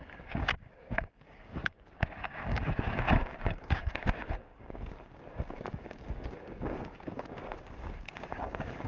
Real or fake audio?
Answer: fake